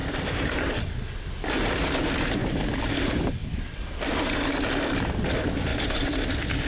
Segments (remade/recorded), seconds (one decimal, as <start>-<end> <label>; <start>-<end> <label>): 0.0-2.4 recorded; 2.4-2.9 remade; 2.9-3.4 recorded; 3.4-4.7 remade; 4.7-5.7 recorded; 5.7-6.3 remade; 6.3-6.7 recorded

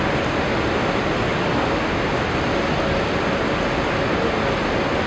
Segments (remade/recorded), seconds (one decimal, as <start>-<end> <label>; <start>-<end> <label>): 0.0-5.1 recorded

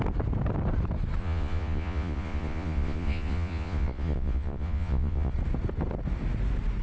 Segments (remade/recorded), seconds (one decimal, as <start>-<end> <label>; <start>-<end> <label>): 0.0-1.2 recorded; 1.2-5.3 remade; 5.3-6.8 recorded

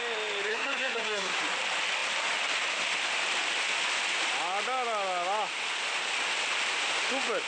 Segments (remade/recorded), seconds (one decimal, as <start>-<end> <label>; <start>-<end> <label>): 0.0-0.5 recorded; 0.5-1.4 remade; 1.4-7.5 recorded

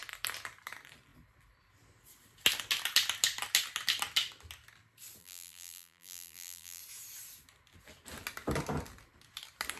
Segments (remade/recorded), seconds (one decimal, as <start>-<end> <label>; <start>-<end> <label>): 0.0-5.2 recorded; 5.2-6.8 remade; 6.8-9.8 recorded

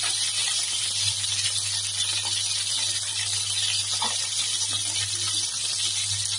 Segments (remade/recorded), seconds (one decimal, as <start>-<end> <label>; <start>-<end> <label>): 0.0-6.4 recorded